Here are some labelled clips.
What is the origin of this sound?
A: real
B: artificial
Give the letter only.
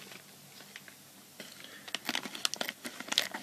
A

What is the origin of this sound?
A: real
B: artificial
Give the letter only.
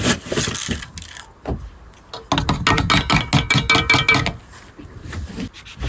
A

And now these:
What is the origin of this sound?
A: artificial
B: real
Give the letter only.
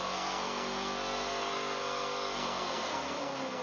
A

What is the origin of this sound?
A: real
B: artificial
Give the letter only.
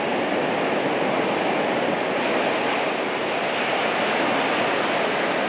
A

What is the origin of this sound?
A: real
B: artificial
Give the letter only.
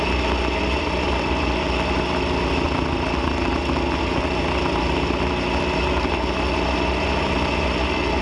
A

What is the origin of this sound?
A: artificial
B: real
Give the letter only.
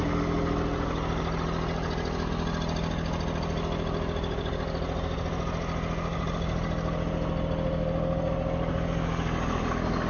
B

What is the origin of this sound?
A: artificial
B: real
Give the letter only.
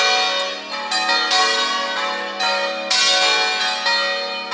B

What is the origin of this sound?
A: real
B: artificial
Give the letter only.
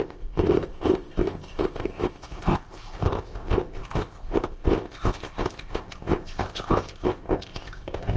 B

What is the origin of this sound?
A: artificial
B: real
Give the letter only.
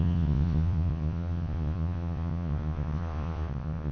A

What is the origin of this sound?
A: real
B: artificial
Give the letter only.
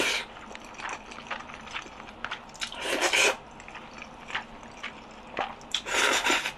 A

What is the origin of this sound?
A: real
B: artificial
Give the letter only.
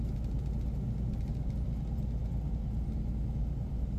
A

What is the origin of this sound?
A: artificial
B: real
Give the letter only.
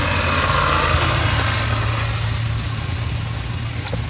B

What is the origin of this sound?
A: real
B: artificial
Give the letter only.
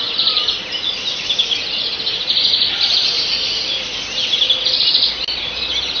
A